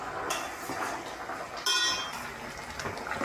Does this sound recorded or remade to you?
recorded